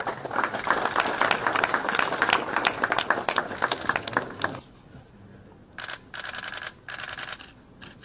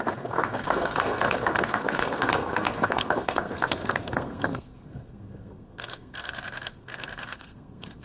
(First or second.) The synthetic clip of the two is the second